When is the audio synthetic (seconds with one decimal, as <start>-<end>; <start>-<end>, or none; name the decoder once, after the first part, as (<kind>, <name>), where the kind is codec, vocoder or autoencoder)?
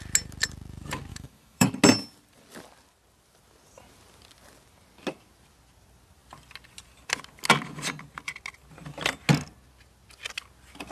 1.1-1.7 (autoencoder, DAC-VAE)